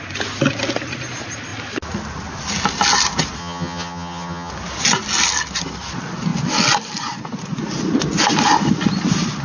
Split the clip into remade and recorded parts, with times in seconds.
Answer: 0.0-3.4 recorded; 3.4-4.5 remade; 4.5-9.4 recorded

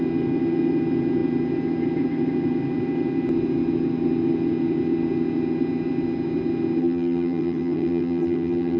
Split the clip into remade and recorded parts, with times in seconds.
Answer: 0.0-6.8 recorded; 6.8-8.8 remade

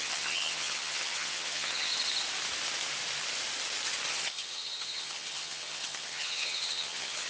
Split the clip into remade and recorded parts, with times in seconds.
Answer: 0.0-1.9 remade; 1.9-4.1 recorded; 4.1-7.3 remade

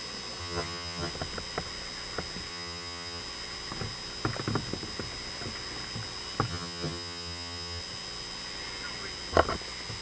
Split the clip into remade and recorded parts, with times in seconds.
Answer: 0.0-0.4 recorded; 0.4-1.1 remade; 1.1-2.5 recorded; 2.5-3.2 remade; 3.2-6.5 recorded; 6.5-7.8 remade; 7.8-10.0 recorded

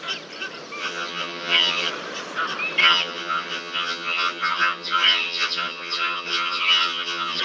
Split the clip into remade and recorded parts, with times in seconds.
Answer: 0.0-0.8 recorded; 0.8-1.9 remade; 1.9-2.8 recorded; 2.8-7.4 remade

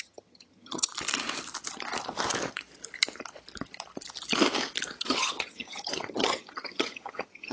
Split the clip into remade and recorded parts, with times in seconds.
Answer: 0.0-0.9 remade; 0.9-5.0 recorded; 5.0-7.5 remade

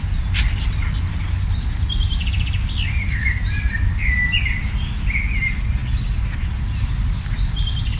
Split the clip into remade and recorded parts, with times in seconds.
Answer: 0.0-8.0 recorded

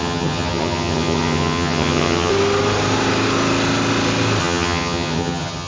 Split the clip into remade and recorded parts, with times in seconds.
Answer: 0.0-2.3 remade; 2.3-4.4 recorded; 4.4-5.7 remade